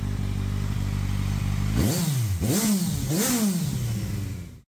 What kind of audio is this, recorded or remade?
recorded